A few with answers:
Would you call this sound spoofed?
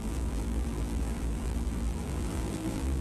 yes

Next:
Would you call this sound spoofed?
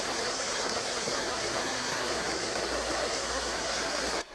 yes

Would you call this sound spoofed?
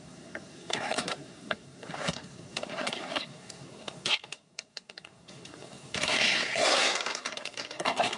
yes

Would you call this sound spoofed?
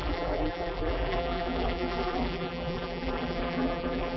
yes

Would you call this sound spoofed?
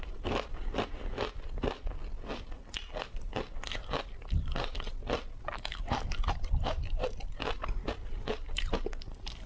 no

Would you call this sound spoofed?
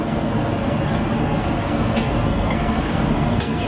yes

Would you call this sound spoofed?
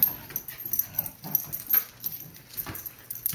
no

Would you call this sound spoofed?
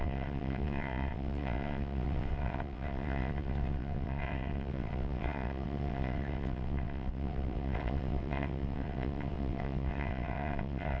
yes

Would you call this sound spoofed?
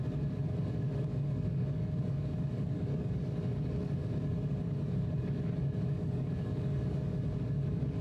yes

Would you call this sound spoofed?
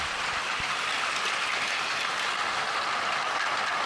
no